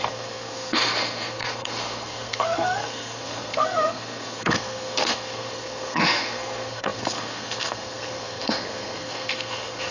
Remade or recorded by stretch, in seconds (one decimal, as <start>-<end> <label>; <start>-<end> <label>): 0.0-9.9 remade